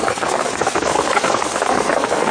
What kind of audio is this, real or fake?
fake